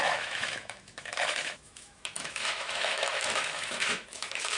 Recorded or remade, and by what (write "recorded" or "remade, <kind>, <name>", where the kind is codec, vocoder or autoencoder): remade, autoencoder, DAC-VAE